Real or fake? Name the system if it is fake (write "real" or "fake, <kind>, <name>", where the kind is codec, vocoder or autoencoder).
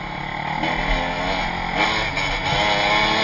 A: real